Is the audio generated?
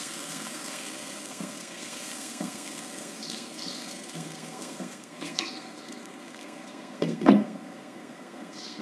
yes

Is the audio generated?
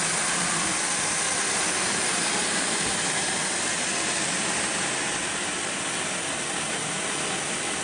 no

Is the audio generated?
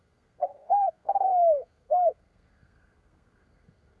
yes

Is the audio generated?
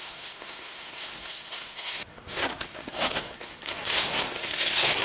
yes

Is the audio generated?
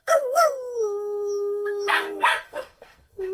yes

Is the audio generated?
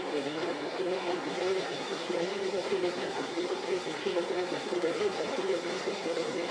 yes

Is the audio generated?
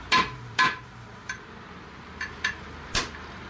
no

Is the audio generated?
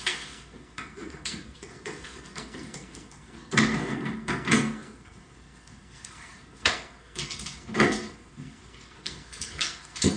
yes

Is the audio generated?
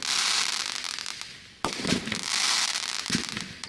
no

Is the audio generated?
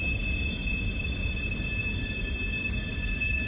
no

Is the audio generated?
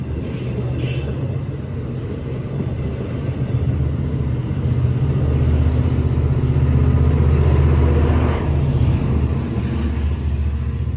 no